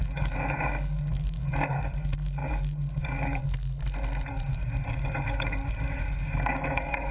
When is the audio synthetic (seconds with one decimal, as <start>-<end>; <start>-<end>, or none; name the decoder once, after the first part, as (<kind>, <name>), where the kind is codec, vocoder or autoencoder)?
0.0-3.4 (codec, DAC); 4.5-7.1